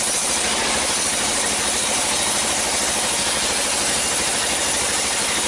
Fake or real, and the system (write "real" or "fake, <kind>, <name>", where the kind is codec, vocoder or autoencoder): real